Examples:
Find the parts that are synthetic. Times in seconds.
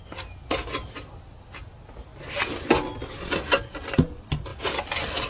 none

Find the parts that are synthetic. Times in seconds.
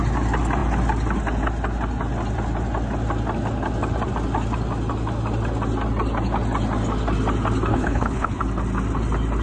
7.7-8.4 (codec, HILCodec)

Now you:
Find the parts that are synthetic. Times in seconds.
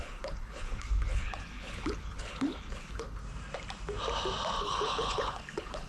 0.0-3.2 (codec, HILCodec); 4.6-5.9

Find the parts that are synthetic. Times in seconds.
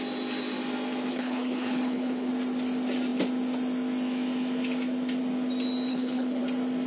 1.1-2.3 (codec, HILCodec); 5.9-6.4